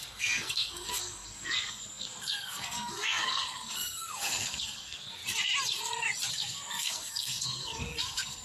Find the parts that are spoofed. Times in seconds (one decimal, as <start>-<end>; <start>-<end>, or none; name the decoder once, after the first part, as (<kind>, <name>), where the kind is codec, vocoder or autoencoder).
0.0-5.2 (codec, SNAC); 6.3-8.4